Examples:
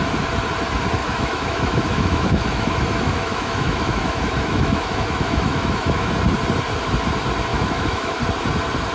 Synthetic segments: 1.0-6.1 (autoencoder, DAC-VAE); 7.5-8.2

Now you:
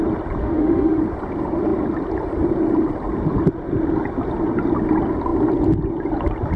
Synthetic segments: 0.4-1.0 (autoencoder, DAC-VAE)

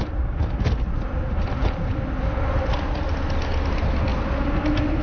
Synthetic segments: none

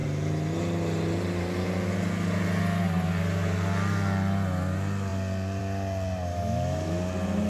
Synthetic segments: 6.3-7.0 (autoencoder, DAC-VAE)

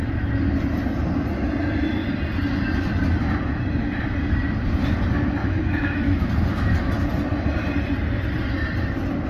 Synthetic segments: 5.4-6.9 (autoencoder, DAC-VAE)